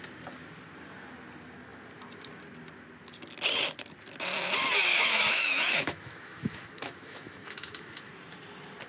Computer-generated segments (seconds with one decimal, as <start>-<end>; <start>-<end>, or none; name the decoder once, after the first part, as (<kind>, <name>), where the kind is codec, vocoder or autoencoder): 4.9-8.1 (autoencoder, DAC-VAE)